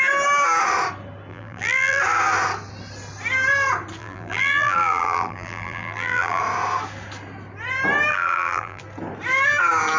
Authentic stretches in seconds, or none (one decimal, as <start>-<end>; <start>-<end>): 0.0-1.3; 2.0-4.0; 6.4-8.1; 8.8-10.0